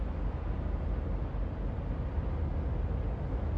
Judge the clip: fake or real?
real